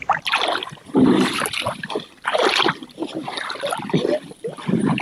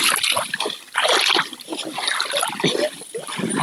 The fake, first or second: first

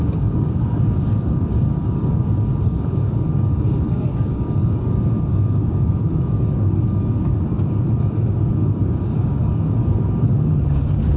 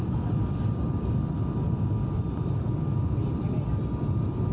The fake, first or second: first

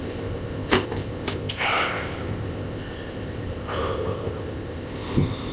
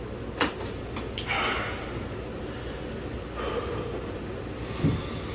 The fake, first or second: first